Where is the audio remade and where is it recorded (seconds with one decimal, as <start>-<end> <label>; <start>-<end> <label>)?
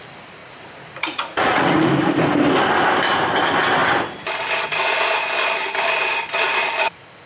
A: 0.0-0.4 recorded; 0.4-1.9 remade; 1.9-6.6 recorded; 6.6-7.3 remade